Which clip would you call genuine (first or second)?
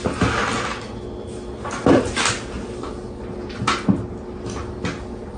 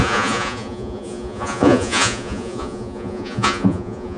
first